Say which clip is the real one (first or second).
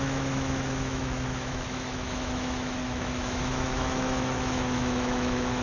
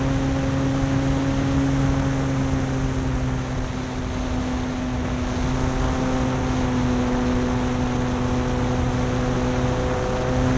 second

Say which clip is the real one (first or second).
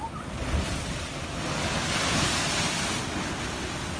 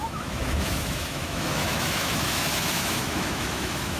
first